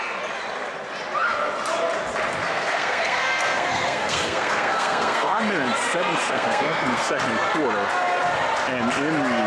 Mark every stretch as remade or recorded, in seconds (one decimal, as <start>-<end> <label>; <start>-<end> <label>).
0.0-2.4 recorded; 2.4-5.4 remade; 5.4-6.2 recorded; 6.2-7.1 remade; 7.1-9.5 recorded